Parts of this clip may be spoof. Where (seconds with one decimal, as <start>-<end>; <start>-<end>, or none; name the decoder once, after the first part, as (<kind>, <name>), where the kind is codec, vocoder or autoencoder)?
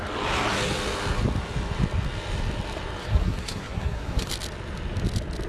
3.0-4.3 (codec, SNAC)